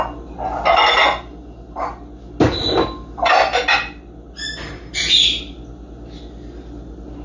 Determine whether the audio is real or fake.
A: real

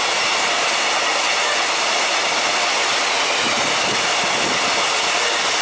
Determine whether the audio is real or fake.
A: real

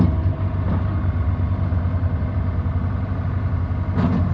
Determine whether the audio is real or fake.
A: real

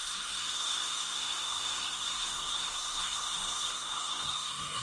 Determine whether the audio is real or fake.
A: fake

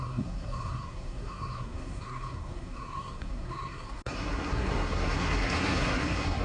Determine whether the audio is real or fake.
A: fake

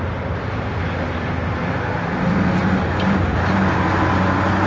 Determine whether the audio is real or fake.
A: real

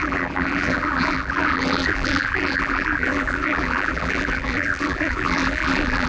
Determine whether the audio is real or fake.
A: fake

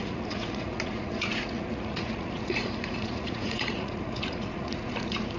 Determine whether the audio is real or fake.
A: fake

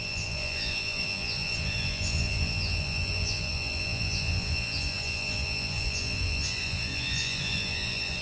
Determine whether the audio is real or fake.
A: fake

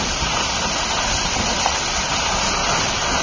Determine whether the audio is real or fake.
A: real